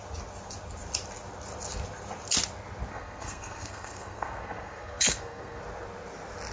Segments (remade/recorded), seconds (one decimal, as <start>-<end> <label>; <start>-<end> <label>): 0.0-2.9 recorded; 2.9-5.6 remade; 5.6-6.5 recorded